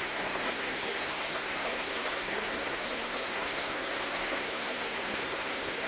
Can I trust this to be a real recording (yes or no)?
no